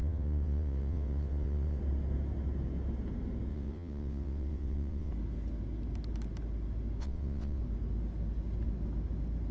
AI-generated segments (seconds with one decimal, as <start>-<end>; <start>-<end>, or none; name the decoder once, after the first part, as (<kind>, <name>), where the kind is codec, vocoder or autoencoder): 0.0-1.8 (vocoder, WaveNeXt); 3.5-5.1; 7.0-7.6